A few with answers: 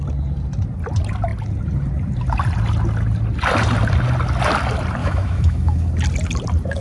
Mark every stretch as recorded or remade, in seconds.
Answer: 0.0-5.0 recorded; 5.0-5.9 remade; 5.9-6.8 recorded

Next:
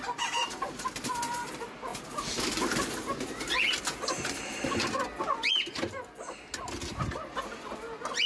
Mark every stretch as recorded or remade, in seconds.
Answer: 0.0-8.3 recorded

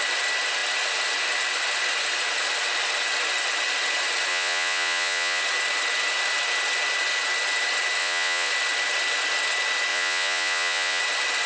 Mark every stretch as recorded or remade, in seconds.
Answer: 0.0-4.3 recorded; 4.3-5.4 remade; 5.4-8.0 recorded; 8.0-8.5 remade; 8.5-9.9 recorded; 9.9-11.0 remade; 11.0-11.5 recorded